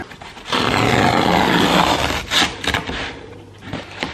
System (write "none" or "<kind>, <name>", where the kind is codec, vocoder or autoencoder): none